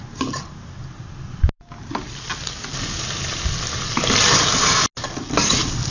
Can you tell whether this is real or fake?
real